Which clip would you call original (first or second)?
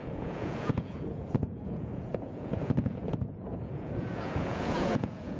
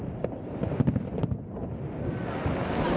second